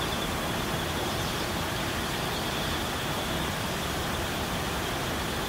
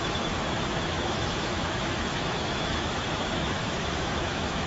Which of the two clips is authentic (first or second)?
first